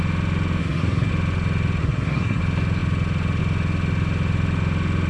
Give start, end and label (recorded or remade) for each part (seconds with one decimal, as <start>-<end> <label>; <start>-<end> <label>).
0.0-0.6 recorded; 0.6-1.1 remade; 1.1-1.8 recorded; 1.8-2.4 remade; 2.4-5.1 recorded